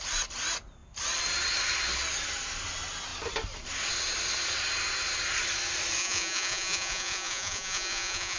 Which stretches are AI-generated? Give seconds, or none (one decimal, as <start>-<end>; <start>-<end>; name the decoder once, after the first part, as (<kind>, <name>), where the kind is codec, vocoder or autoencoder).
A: 6.0-8.4 (vocoder, Vocos)